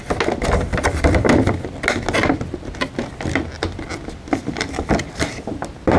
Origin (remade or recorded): recorded